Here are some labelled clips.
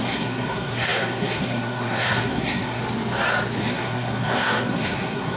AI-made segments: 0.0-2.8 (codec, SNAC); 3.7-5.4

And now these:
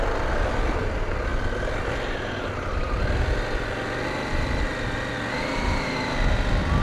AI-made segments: none

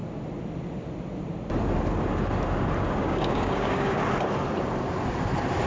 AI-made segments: 3.0-4.0 (codec, DAC)

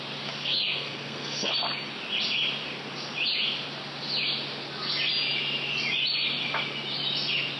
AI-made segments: 0.4-1.5 (codec, SNAC)